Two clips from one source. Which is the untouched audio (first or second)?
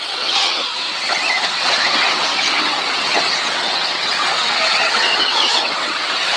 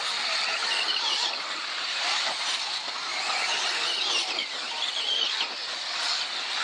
second